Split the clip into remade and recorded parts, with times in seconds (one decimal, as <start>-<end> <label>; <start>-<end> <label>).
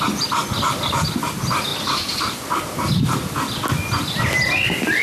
0.0-5.0 recorded